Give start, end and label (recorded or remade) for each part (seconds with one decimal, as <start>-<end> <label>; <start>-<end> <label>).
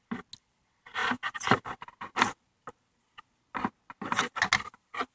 0.0-5.1 recorded